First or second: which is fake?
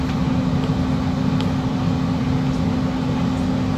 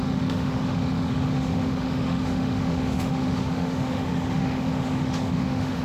second